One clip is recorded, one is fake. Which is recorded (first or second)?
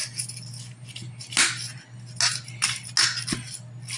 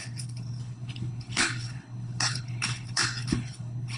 first